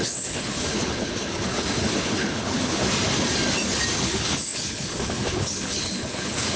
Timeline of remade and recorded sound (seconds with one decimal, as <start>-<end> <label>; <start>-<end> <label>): 0.0-2.8 remade; 2.8-4.0 recorded; 4.0-6.6 remade